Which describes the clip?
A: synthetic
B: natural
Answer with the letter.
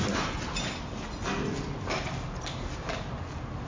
B